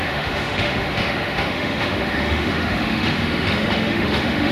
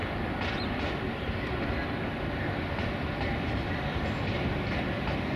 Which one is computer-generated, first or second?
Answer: first